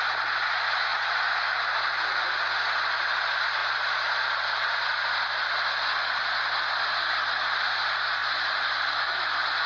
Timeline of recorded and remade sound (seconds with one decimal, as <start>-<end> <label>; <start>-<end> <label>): 0.0-3.6 recorded; 3.6-4.9 remade; 4.9-8.2 recorded; 8.2-8.9 remade; 8.9-9.7 recorded